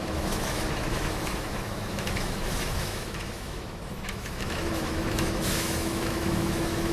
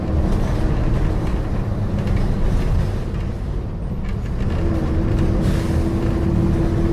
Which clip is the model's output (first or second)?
first